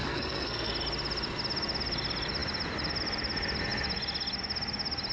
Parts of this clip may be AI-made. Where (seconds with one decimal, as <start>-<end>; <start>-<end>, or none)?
0.0-0.7